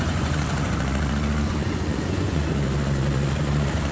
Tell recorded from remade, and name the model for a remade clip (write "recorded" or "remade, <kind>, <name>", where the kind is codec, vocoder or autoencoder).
remade, vocoder, Vocos